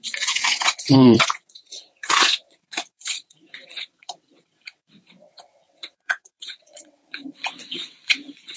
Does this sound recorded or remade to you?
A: remade